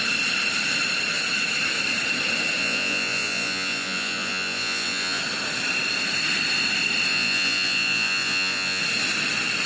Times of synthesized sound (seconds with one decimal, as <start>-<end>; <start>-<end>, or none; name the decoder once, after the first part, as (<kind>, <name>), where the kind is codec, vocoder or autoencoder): 2.6-5.2 (vocoder, Vocos); 7.1-8.8